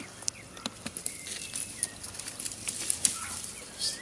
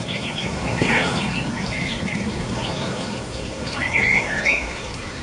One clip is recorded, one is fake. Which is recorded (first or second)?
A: first